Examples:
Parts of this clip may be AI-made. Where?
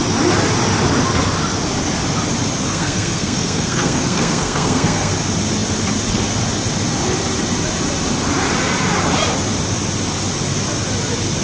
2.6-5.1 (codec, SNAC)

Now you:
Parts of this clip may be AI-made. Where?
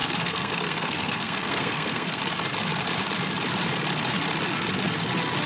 0.0-2.2 (codec, SNAC)